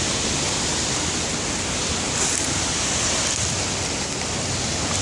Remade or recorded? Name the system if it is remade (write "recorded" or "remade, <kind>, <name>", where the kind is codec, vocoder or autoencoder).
recorded